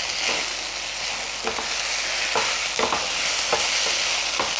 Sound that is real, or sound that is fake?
real